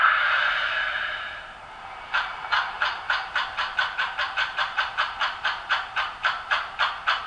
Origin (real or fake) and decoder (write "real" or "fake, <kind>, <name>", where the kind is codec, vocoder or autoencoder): fake, vocoder, BigVGAN v2